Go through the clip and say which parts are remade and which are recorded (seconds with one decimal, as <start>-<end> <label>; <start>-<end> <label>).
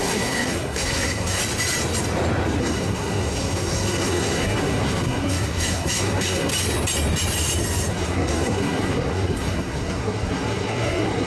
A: 0.0-1.4 remade; 1.4-2.6 recorded; 2.6-6.5 remade; 6.5-7.9 recorded; 7.9-11.3 remade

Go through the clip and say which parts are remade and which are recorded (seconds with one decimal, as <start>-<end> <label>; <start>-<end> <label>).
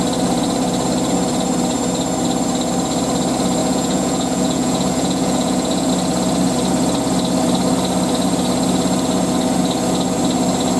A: 0.0-3.6 recorded; 3.6-5.9 remade; 5.9-10.8 recorded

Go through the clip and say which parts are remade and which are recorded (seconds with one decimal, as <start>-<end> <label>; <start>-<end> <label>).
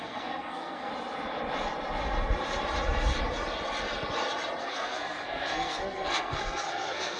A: 0.0-0.9 remade; 0.9-4.6 recorded; 4.6-7.2 remade